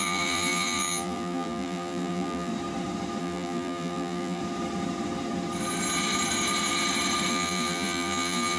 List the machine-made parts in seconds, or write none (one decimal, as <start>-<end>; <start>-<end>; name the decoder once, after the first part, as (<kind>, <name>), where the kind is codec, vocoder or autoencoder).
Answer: 0.0-2.5 (vocoder, BigVGAN v2); 3.2-4.4; 7.3-8.6